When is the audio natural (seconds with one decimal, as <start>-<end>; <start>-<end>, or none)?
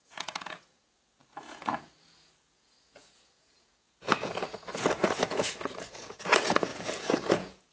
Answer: none